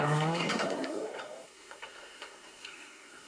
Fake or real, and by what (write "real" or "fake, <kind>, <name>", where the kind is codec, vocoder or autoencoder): fake, codec, SNAC